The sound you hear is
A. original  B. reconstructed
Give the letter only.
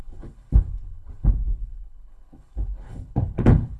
B